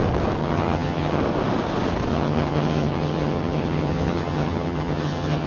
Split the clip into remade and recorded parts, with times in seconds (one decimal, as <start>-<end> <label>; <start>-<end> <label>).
0.0-0.4 recorded; 0.4-1.2 remade; 1.2-2.1 recorded; 2.1-5.5 remade